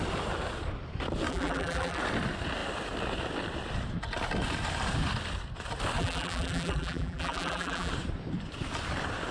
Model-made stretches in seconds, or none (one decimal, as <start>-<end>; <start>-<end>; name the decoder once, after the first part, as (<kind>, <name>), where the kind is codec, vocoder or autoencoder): 1.3-2.0 (vocoder, BigVGAN v2); 6.0-7.9